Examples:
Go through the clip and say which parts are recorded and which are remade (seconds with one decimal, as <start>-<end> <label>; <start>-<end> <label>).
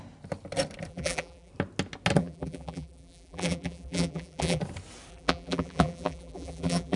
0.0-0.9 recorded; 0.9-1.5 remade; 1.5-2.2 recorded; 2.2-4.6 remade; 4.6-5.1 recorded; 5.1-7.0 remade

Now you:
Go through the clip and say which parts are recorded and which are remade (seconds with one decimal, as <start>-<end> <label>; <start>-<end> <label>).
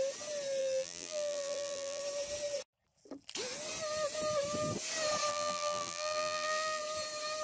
0.0-0.6 recorded; 0.6-2.0 remade; 2.0-5.3 recorded; 5.3-6.8 remade; 6.8-7.4 recorded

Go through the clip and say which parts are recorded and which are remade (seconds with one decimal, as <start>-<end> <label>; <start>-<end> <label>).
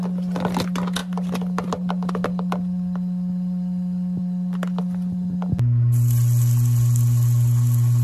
0.0-8.0 recorded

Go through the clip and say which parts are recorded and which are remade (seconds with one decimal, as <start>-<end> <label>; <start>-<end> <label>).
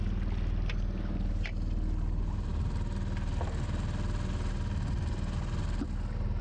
0.0-6.4 recorded